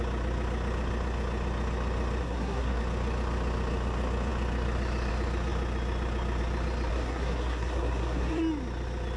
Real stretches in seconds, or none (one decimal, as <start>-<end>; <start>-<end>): 0.0-2.2; 2.8-6.9; 8.4-9.2